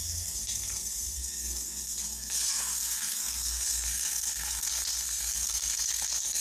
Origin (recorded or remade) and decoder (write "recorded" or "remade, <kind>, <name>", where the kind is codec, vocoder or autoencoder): remade, codec, SNAC